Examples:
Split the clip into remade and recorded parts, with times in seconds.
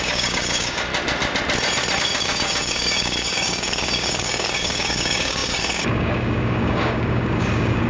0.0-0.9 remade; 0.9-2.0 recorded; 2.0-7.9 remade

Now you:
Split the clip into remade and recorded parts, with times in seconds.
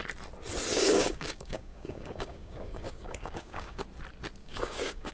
0.0-0.7 recorded; 0.7-3.8 remade; 3.8-4.4 recorded; 4.4-5.1 remade